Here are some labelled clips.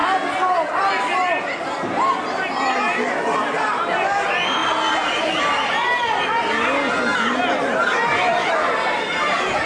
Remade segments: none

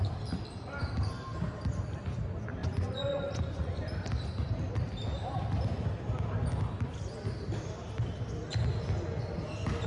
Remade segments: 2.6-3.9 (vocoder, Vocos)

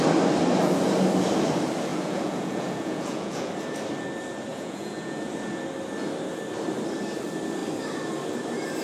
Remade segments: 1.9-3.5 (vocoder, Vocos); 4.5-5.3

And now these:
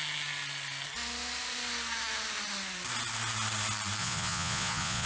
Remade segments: 4.0-5.1 (vocoder, Vocos)

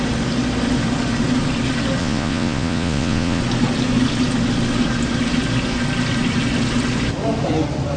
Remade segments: 2.0-3.4 (vocoder, Vocos)

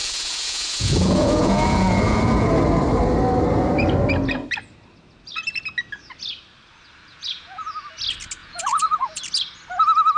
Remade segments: 0.0-2.5 (vocoder, Vocos); 7.1-7.7; 8.4-9.2